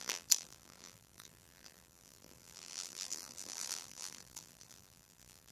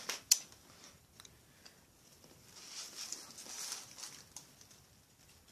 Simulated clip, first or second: first